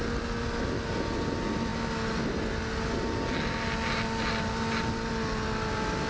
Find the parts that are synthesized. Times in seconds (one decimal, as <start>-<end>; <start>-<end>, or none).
none